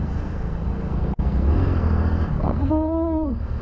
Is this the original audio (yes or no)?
no